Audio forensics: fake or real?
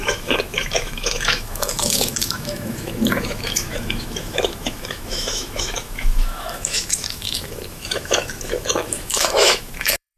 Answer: fake